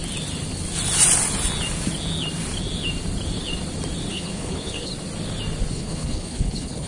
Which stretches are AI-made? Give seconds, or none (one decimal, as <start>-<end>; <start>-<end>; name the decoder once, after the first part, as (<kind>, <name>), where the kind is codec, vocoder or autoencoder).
4.1-4.9 (codec, HILCodec); 5.7-6.9